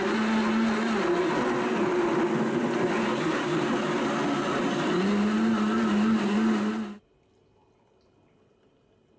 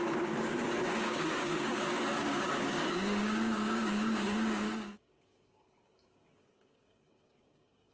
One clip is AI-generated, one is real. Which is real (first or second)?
first